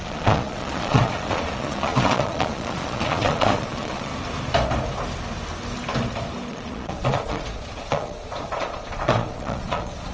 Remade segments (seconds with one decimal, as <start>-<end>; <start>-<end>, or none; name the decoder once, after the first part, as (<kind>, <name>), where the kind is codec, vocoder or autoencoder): 0.0-4.1 (vocoder, Vocos); 6.5-10.1